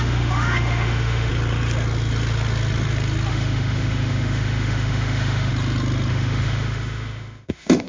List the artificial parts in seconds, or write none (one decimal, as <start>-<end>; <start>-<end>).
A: 0.0-1.3; 3.3-5.5; 6.1-7.9